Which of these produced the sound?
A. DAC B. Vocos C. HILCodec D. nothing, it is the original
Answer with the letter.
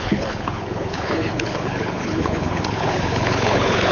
C